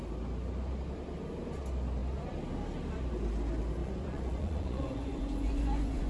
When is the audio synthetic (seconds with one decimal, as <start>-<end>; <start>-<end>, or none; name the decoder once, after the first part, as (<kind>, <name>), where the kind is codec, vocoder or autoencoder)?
3.8-6.1 (vocoder, Vocos)